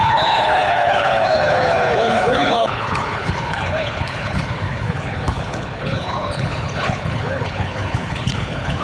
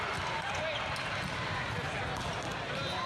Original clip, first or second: second